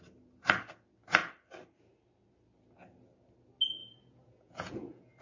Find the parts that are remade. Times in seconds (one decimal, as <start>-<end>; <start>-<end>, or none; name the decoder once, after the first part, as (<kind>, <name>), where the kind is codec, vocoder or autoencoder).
3.8-5.2 (vocoder, Vocos)